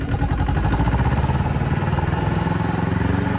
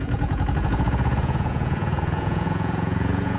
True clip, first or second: first